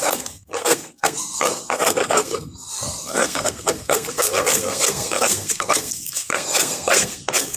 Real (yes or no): no